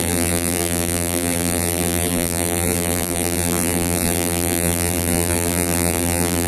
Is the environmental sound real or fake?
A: fake